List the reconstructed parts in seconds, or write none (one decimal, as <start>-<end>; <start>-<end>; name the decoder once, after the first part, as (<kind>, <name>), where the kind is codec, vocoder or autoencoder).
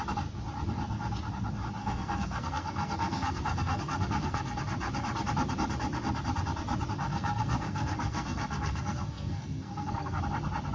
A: 1.8-4.6 (codec, SNAC); 7.1-10.2